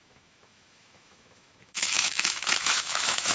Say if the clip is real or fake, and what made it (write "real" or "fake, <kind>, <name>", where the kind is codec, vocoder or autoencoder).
fake, autoencoder, DAC-VAE